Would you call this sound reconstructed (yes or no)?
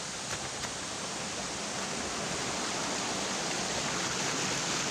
no